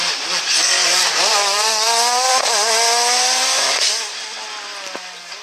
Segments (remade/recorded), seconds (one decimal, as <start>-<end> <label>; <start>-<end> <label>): 0.0-2.7 remade; 2.7-5.4 recorded